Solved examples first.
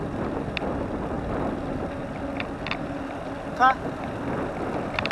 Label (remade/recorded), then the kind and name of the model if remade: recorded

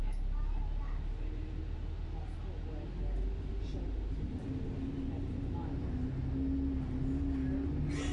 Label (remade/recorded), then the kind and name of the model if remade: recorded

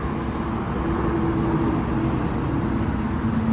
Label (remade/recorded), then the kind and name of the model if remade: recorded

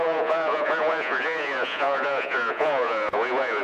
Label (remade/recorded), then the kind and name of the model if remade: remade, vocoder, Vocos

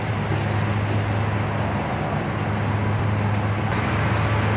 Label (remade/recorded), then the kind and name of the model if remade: recorded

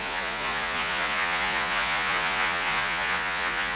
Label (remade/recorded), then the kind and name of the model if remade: remade, vocoder, Vocos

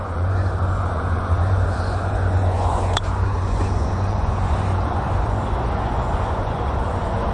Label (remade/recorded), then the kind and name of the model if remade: remade, vocoder, Vocos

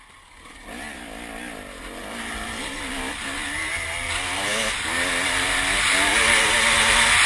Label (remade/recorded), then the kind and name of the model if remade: recorded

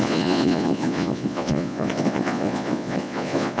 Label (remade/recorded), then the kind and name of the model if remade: remade, vocoder, Vocos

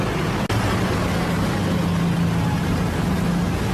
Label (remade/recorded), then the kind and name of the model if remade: recorded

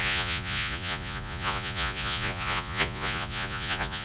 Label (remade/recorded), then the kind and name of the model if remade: remade, vocoder, Vocos